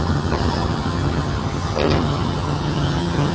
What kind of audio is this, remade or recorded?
remade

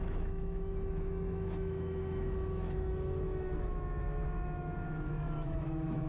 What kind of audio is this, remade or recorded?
remade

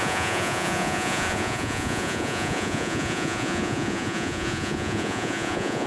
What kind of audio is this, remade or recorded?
remade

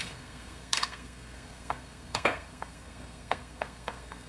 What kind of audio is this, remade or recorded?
remade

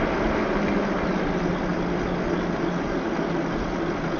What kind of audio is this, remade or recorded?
recorded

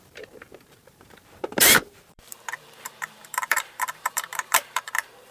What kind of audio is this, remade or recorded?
remade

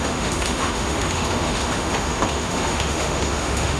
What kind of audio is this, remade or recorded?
remade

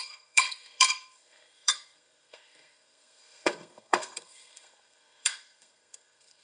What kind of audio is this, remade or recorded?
remade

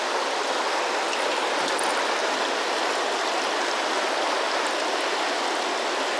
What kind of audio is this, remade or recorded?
recorded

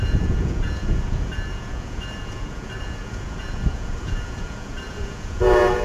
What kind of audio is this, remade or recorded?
remade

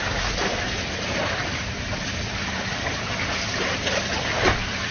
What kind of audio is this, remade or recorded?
recorded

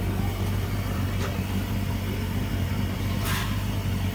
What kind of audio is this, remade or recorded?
recorded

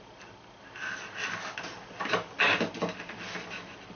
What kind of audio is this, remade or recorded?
recorded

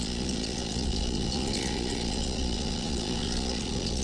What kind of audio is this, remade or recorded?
remade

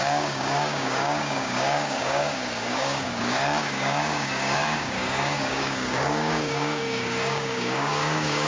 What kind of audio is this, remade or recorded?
remade